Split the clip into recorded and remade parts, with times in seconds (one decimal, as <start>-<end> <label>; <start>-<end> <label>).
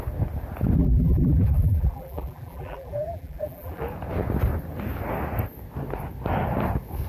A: 0.0-0.8 recorded; 0.8-3.8 remade; 3.8-7.1 recorded